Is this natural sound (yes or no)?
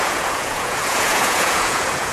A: no